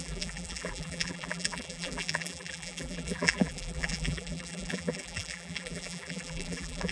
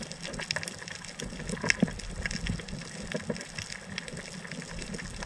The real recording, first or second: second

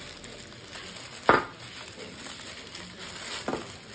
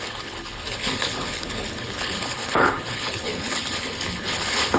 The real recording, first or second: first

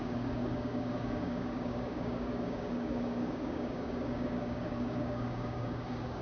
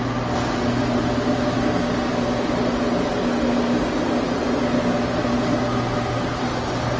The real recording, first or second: second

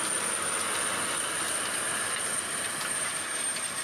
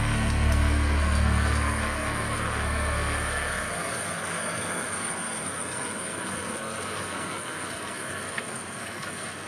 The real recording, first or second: first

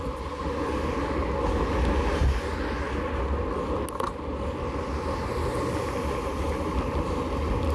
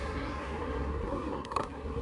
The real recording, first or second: first